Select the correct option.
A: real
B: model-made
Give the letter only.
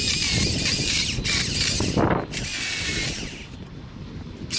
A